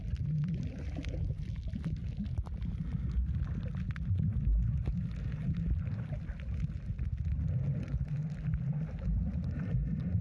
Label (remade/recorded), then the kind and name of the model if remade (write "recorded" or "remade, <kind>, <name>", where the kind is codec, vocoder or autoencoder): recorded